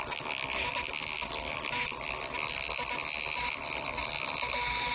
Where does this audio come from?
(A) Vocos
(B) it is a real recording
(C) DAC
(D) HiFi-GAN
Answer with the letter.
B